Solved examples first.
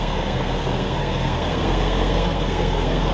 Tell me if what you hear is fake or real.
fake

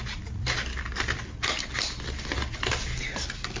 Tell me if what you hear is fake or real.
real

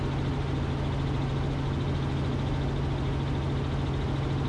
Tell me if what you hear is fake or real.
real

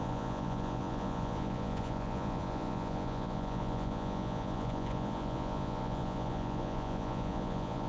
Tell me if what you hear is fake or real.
fake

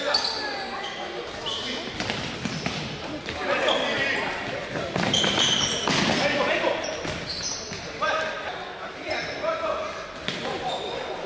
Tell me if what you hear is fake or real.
real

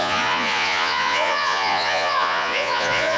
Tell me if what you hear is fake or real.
fake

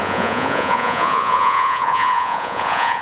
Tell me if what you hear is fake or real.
fake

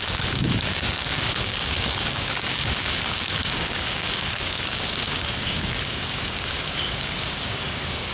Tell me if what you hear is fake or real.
fake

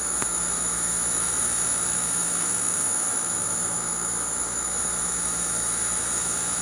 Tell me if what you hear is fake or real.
fake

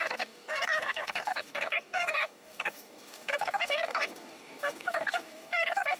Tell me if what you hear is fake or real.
fake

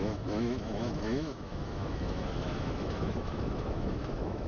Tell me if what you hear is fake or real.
fake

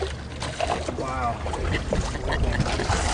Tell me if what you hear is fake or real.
real